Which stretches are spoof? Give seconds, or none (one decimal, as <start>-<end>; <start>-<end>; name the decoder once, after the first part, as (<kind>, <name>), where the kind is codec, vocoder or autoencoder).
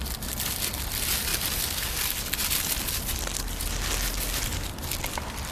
none